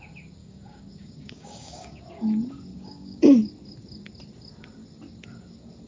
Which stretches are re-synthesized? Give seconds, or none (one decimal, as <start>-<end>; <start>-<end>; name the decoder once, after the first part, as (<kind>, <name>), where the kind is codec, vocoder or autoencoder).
0.4-2.0 (codec, DAC); 2.7-3.2

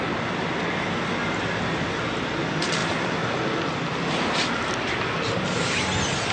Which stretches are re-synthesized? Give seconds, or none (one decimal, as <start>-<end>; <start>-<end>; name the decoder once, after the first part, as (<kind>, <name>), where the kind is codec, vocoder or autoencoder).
none

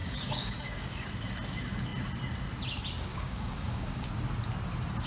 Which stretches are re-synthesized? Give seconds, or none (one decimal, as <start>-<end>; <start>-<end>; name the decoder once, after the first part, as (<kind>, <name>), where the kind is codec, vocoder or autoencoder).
0.0-1.1 (codec, DAC); 3.1-4.1

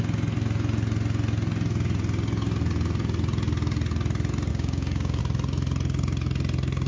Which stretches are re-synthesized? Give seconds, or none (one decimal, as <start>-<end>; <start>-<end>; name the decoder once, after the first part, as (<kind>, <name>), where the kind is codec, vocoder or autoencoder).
4.5-5.2 (codec, DAC)

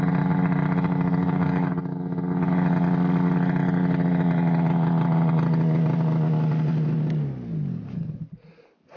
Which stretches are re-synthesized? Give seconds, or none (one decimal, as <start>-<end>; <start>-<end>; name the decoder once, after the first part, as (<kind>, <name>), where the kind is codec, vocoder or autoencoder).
1.2-1.7 (codec, DAC)